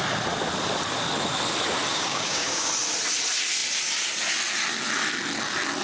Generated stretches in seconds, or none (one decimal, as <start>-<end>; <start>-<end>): 1.9-2.7